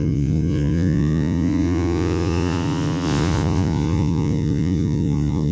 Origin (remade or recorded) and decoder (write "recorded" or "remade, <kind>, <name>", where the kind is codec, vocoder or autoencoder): remade, vocoder, Vocos